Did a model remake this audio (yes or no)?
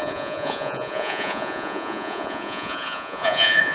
yes